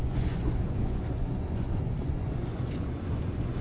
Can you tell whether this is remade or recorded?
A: remade